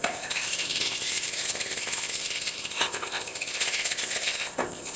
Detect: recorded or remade remade